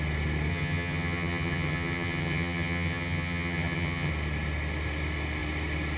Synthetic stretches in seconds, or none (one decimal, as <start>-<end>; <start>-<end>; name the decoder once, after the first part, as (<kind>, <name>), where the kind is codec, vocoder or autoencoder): 0.5-4.1 (vocoder, HiFi-GAN)